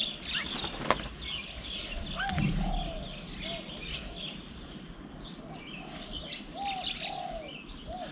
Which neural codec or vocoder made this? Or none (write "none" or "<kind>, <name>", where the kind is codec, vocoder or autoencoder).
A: none